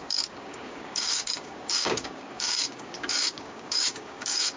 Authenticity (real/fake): fake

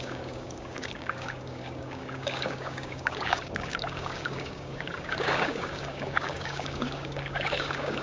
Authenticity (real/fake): fake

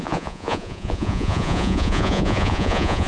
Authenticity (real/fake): fake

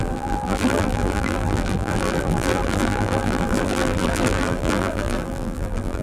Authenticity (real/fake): fake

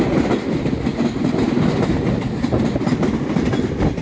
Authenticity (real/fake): real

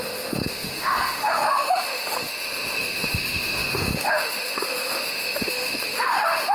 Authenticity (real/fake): fake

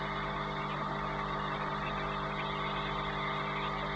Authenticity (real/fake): real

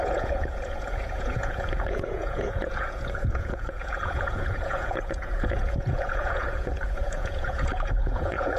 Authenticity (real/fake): fake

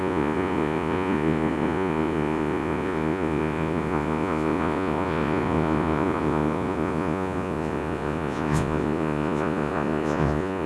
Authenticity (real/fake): fake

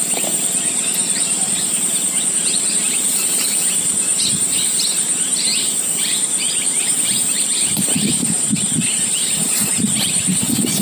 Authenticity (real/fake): fake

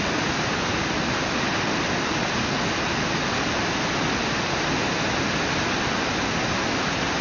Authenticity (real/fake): real